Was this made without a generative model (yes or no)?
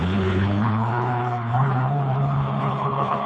no